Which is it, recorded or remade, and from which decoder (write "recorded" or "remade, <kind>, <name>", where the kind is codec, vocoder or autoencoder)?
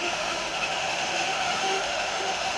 remade, autoencoder, DAC-VAE